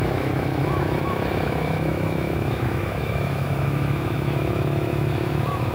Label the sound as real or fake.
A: fake